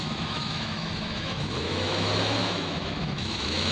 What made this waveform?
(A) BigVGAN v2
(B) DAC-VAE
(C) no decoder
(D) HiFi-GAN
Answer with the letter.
B